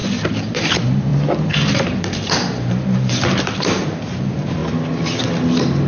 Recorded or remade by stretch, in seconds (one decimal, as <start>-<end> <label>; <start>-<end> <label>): 0.0-1.1 remade; 1.1-1.7 recorded; 1.7-4.6 remade; 4.6-5.9 recorded